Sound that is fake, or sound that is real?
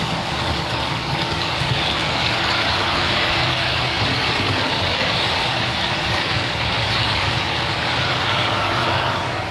fake